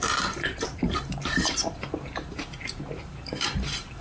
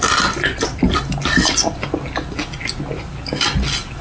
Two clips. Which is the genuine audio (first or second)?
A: second